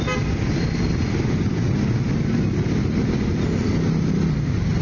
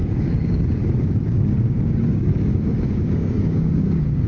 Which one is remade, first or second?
second